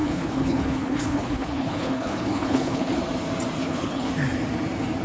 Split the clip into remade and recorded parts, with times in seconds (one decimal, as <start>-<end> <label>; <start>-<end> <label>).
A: 0.0-3.0 remade; 3.0-3.6 recorded; 3.6-4.1 remade; 4.1-5.0 recorded